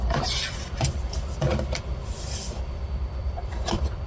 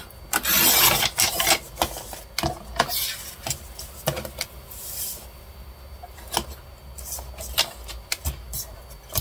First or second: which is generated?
first